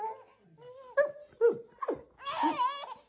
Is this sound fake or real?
real